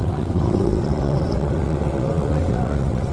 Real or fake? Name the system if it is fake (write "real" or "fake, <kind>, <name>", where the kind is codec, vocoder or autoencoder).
fake, vocoder, WaveNeXt